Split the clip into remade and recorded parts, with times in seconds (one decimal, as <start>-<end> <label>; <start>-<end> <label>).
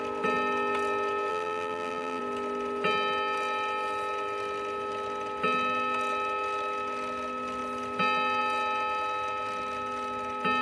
0.0-1.3 recorded; 1.3-2.2 remade; 2.2-10.6 recorded